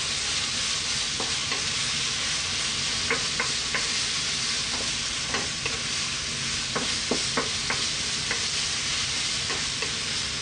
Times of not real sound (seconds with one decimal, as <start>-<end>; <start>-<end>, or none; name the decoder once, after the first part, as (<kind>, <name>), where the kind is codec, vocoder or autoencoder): 1.4-2.2 (vocoder, BigVGAN v2)